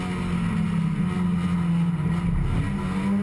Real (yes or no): yes